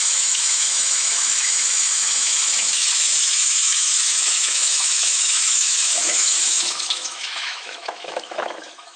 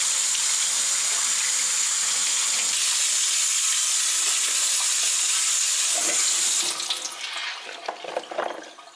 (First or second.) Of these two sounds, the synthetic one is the first